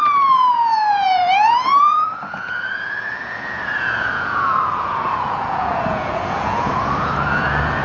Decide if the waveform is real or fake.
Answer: fake